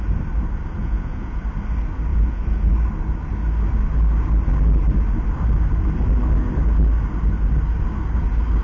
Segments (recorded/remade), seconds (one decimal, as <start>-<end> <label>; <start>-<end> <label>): 0.0-0.8 recorded; 0.8-1.4 remade; 1.4-2.1 recorded; 2.1-2.7 remade; 2.7-8.6 recorded